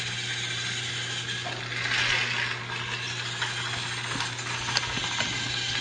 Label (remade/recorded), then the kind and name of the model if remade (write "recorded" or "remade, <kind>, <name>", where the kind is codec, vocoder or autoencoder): recorded